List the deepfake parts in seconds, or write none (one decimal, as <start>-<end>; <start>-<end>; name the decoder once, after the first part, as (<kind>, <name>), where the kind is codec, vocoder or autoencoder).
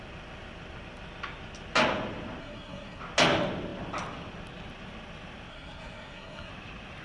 2.4-3.0 (codec, SNAC); 5.5-6.5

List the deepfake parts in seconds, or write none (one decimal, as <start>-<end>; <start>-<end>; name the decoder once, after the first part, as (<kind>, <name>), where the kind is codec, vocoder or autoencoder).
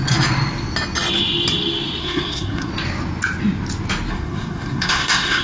2.0-2.7 (codec, SNAC); 4.1-5.4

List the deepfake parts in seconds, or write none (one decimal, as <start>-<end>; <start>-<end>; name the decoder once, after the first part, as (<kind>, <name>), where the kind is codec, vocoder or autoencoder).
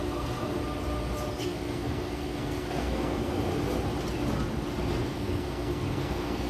0.0-0.6 (codec, SNAC); 1.3-3.5; 5.0-6.5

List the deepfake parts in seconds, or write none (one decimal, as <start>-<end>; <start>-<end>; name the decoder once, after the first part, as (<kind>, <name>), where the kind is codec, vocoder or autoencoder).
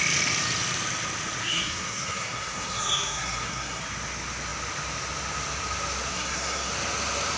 1.4-3.8 (codec, SNAC); 6.1-6.7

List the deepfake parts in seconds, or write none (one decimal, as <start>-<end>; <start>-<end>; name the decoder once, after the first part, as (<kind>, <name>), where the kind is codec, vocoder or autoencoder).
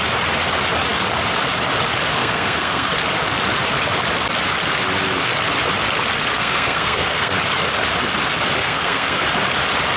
2.2-2.9 (codec, SNAC); 6.3-7.3; 8.6-9.2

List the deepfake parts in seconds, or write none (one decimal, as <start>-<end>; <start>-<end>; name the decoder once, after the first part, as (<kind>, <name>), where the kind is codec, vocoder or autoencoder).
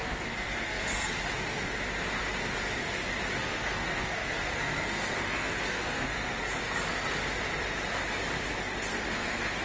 0.0-1.2 (codec, SNAC); 3.4-6.4; 8.9-9.6